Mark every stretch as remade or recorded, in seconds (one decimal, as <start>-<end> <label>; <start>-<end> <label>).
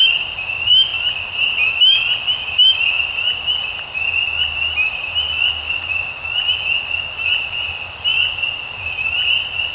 0.0-8.1 recorded; 8.1-9.7 remade